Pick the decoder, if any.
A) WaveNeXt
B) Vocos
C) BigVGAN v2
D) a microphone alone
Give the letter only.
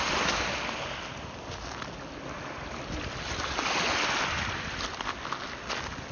D